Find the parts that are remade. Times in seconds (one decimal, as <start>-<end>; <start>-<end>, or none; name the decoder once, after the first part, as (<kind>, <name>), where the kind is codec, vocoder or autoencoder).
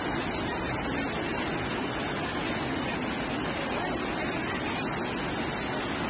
none